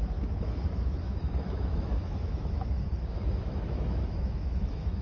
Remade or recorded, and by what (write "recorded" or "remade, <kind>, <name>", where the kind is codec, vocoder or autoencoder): remade, autoencoder, DAC-VAE